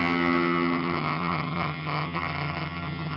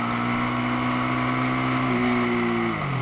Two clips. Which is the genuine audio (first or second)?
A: second